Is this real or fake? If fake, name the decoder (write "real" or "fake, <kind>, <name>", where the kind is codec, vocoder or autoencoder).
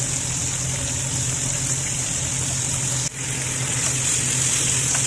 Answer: real